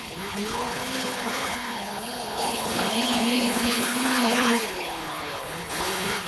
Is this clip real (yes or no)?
no